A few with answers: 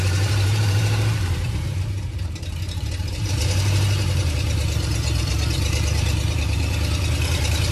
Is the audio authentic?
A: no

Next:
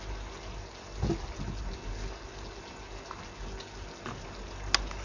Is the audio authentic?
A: yes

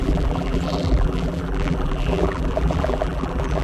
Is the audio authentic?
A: no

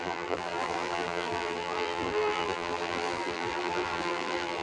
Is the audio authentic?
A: no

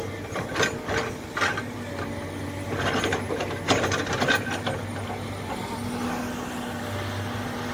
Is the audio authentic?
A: yes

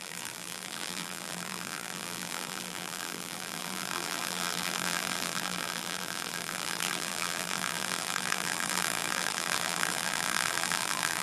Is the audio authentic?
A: no